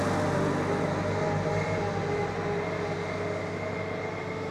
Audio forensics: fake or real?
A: real